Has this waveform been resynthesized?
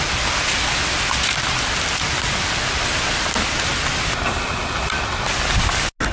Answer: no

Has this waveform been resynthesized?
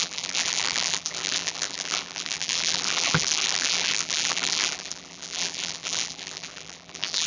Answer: yes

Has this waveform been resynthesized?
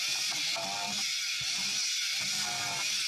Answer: no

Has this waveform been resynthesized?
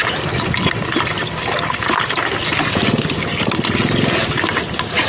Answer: no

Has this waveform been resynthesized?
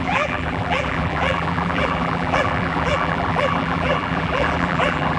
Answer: yes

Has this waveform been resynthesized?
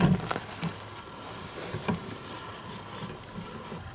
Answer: no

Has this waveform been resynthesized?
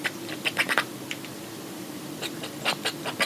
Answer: no